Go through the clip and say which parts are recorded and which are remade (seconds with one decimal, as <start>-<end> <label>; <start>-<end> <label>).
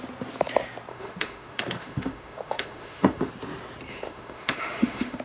0.0-0.9 recorded; 0.9-3.3 remade; 3.3-3.9 recorded; 3.9-5.2 remade